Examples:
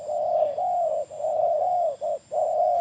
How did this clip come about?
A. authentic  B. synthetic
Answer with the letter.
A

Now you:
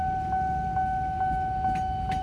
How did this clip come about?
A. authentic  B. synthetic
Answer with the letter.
A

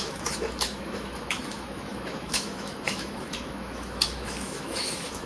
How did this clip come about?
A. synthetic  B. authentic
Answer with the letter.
A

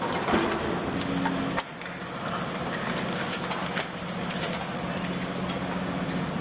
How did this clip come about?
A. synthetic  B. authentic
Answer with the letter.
B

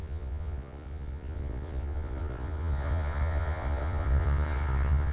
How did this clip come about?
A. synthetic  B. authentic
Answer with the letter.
A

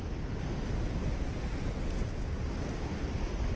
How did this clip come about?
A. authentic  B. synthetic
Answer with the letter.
A